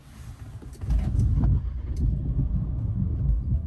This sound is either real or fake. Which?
real